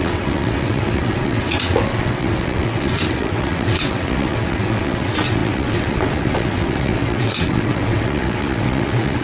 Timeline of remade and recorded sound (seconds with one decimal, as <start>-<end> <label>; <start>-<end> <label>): 0.0-9.2 remade